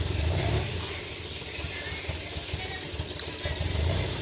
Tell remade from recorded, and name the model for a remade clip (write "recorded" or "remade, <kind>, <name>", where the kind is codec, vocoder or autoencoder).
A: recorded